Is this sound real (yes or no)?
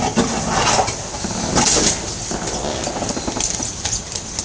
yes